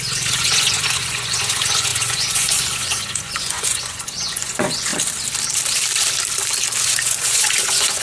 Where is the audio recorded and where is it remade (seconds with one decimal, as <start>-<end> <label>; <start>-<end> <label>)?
0.0-4.9 remade; 4.9-6.8 recorded; 6.8-8.0 remade